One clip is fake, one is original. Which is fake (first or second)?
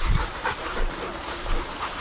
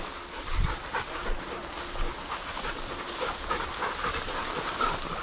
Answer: first